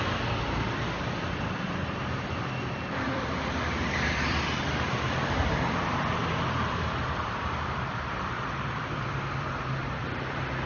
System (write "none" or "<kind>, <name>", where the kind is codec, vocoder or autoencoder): vocoder, BigVGAN v2